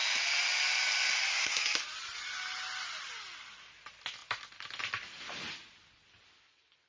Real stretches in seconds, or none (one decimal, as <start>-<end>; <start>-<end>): 0.0-6.9